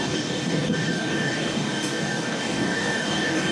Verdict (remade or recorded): remade